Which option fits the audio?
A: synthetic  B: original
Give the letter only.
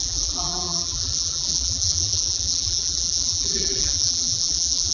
A